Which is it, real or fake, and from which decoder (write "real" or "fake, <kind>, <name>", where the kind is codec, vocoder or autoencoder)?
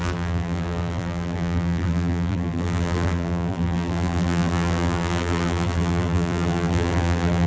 fake, vocoder, BigVGAN v2